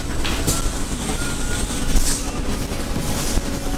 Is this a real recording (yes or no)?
yes